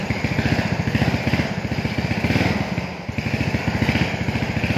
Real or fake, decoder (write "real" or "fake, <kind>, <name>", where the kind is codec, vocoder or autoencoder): real